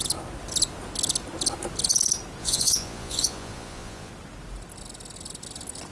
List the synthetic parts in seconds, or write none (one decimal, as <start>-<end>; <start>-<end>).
2.4-4.1